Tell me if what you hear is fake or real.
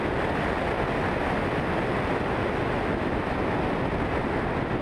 real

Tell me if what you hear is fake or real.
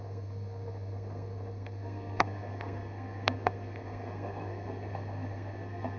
fake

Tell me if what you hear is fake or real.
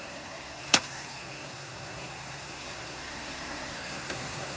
fake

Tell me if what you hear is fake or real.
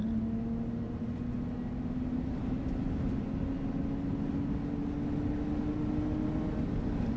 real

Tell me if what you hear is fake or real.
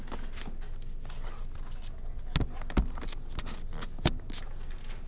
real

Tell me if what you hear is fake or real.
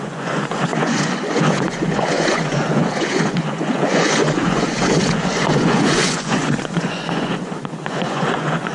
fake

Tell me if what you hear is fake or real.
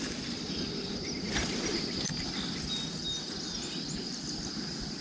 real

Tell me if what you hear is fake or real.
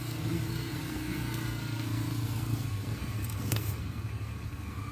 fake